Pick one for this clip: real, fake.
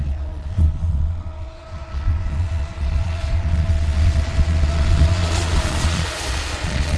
fake